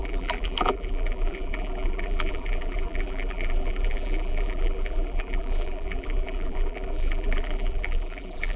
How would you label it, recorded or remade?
remade